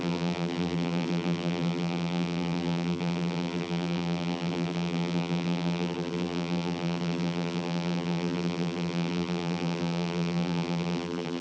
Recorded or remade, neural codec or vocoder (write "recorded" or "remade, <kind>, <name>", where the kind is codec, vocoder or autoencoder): remade, vocoder, BigVGAN v2